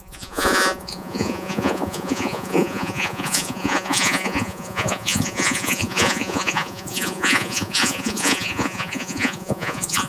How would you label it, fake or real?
fake